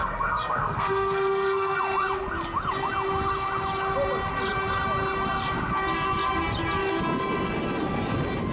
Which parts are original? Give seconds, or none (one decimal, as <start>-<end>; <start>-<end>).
1.8-8.5